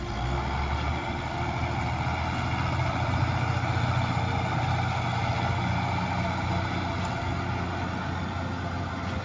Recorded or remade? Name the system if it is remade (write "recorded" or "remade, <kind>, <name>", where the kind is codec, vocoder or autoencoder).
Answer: recorded